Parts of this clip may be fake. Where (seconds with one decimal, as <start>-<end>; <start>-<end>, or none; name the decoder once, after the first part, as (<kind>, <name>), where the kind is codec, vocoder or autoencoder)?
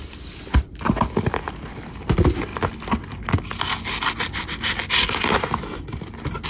none